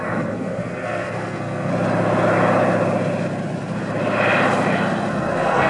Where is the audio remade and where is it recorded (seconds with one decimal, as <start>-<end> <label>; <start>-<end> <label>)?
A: 0.0-1.7 remade; 1.7-5.1 recorded; 5.1-5.7 remade